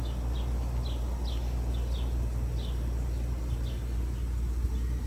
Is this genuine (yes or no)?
yes